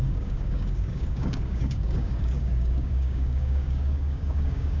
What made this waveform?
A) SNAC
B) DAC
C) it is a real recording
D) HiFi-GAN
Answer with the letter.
B